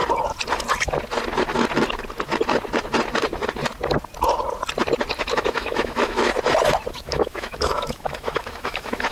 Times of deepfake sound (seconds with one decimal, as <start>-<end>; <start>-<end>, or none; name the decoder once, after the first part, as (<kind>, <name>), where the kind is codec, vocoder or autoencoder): 5.3-6.3 (autoencoder, DAC-VAE); 6.9-9.1